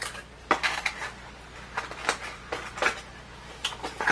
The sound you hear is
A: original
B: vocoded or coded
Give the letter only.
A